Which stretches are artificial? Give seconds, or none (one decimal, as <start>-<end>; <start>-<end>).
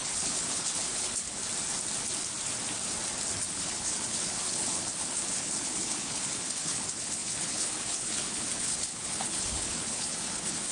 0.0-1.4; 3.4-10.7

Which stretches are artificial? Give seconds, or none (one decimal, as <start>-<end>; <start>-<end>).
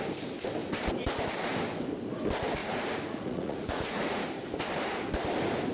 2.6-4.2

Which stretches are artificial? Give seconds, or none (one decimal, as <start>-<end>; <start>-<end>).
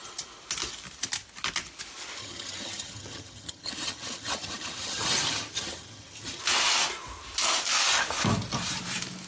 2.2-6.4